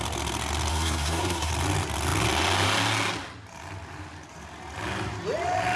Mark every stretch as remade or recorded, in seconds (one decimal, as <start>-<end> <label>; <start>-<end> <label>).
0.0-0.7 recorded; 0.7-1.5 remade; 1.5-5.8 recorded